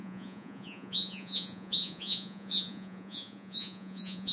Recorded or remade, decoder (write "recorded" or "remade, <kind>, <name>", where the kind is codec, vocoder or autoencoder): remade, vocoder, Vocos